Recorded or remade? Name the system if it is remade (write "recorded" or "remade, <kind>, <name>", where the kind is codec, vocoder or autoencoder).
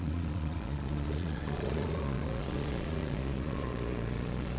remade, vocoder, Vocos